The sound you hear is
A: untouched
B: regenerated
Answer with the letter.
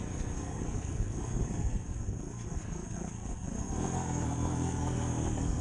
B